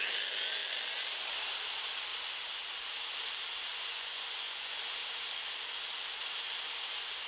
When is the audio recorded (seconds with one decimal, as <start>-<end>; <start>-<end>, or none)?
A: 0.0-3.7; 4.8-7.3